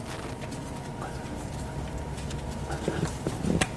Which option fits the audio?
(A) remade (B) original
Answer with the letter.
B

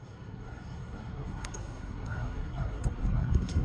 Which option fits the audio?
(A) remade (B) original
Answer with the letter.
A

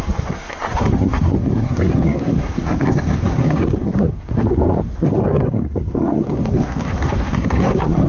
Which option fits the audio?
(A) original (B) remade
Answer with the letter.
B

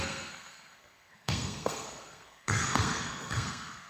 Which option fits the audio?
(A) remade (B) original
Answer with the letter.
A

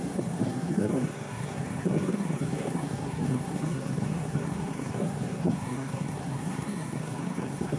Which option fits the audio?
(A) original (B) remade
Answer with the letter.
B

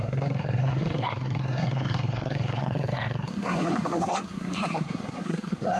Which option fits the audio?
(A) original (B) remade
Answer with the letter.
B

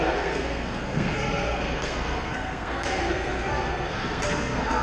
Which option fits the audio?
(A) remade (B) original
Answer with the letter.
A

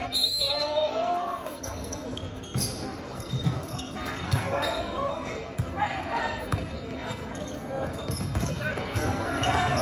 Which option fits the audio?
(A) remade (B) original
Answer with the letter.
A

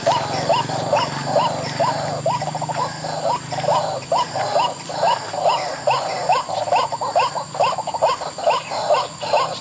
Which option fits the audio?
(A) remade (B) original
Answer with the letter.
B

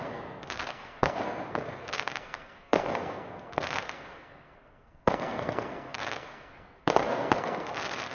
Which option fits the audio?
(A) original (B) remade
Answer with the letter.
B